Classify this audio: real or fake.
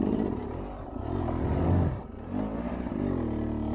real